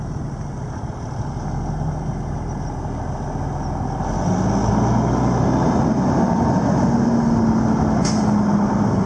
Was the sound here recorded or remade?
recorded